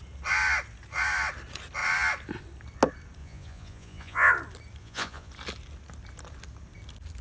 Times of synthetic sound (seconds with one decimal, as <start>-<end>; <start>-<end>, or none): 3.2-4.3; 4.8-5.3